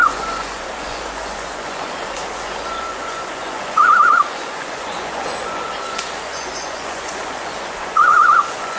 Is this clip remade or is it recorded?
remade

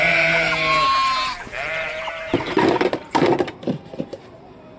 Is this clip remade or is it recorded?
remade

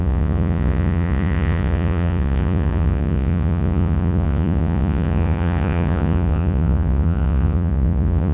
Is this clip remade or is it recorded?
remade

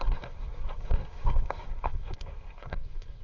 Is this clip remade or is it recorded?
remade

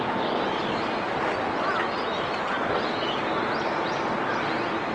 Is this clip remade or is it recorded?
recorded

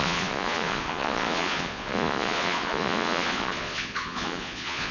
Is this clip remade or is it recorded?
remade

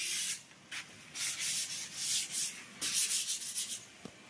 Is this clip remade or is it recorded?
recorded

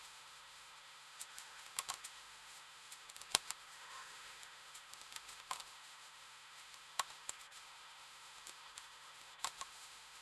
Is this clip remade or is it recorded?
remade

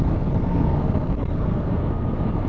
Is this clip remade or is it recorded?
remade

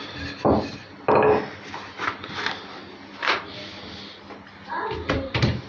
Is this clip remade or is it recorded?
recorded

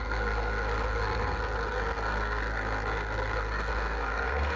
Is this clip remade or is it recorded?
remade